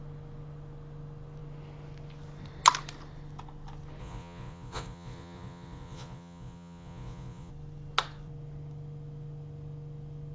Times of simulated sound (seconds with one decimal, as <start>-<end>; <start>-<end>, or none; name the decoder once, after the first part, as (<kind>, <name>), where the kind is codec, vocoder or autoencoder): 4.0-7.5 (vocoder, Vocos)